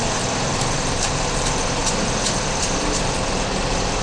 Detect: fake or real fake